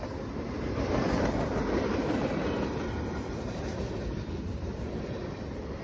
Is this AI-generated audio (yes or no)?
yes